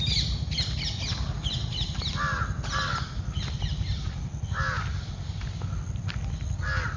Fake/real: real